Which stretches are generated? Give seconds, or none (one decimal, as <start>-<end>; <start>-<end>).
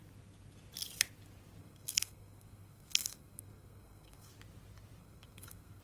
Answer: 1.6-4.3; 5.0-5.8